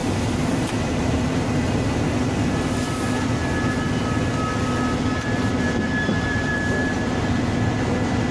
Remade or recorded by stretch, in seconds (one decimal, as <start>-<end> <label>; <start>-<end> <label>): 0.0-0.9 recorded; 0.9-3.4 remade; 3.4-5.2 recorded; 5.2-8.3 remade